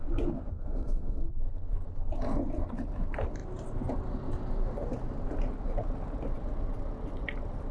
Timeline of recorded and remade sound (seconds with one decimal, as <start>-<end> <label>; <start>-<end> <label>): 0.0-0.5 recorded; 0.5-1.4 remade; 1.4-7.7 recorded